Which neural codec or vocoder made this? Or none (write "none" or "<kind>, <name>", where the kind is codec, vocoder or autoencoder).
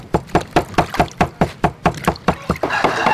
none